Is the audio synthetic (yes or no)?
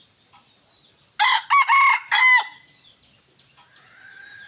no